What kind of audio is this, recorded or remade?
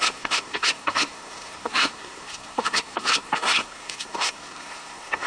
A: remade